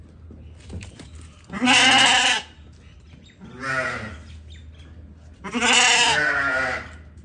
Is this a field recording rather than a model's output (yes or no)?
yes